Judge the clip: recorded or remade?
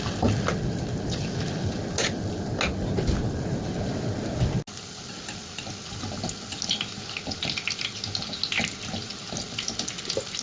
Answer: recorded